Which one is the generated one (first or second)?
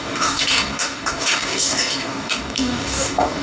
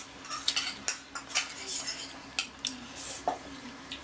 first